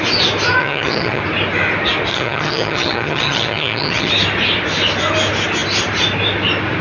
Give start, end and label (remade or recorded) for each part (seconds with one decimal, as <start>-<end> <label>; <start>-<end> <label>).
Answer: 0.0-0.6 recorded; 0.6-1.2 remade; 1.2-2.1 recorded; 2.1-4.1 remade; 4.1-6.8 recorded

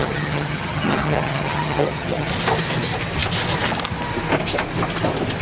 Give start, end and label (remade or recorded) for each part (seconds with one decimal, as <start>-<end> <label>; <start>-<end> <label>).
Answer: 0.0-2.3 remade; 2.3-5.4 recorded

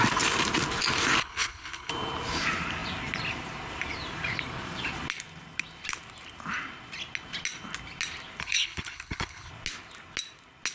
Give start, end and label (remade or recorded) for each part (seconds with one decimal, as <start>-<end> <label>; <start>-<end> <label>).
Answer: 0.0-1.2 recorded; 1.2-1.9 remade; 1.9-8.4 recorded; 8.4-9.5 remade; 9.5-10.7 recorded

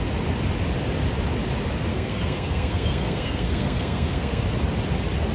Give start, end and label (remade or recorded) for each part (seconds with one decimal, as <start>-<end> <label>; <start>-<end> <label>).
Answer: 0.0-1.9 recorded; 1.9-4.4 remade; 4.4-5.3 recorded

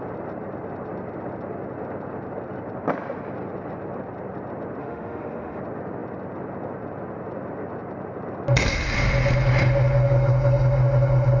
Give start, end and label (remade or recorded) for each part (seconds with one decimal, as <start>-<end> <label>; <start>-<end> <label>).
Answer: 0.0-4.8 recorded; 4.8-5.6 remade; 5.6-11.4 recorded

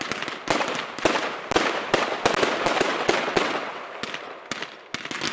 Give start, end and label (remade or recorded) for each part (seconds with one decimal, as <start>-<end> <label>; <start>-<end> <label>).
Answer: 0.0-2.9 recorded; 2.9-3.8 remade; 3.8-5.3 recorded

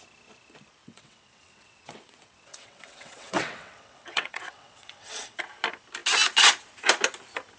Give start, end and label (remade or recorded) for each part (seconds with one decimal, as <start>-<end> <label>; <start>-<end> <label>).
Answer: 0.0-0.8 recorded; 0.8-5.4 remade; 5.4-7.6 recorded

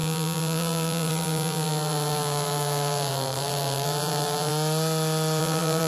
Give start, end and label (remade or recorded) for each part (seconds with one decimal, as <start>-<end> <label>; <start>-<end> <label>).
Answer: 0.0-4.5 remade; 4.5-5.4 recorded; 5.4-5.9 remade